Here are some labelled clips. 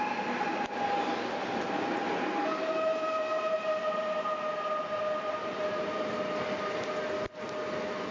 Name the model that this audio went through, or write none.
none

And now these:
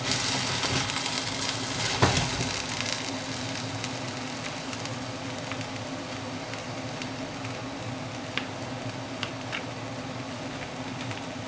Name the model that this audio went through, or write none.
none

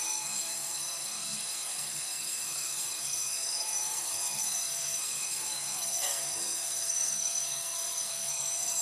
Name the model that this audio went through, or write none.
codec, SNAC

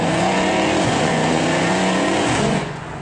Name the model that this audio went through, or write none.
vocoder, Vocos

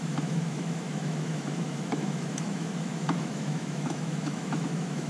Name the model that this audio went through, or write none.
autoencoder, DAC-VAE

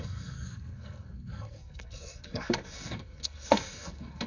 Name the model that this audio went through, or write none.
codec, SNAC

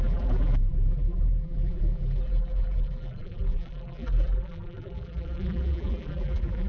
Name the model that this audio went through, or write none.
vocoder, BigVGAN v2